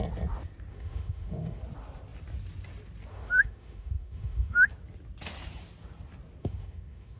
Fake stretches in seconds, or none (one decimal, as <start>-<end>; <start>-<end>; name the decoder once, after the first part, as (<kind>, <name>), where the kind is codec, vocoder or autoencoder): 0.7-1.6 (autoencoder, DAC-VAE); 3.1-4.7; 6.4-7.2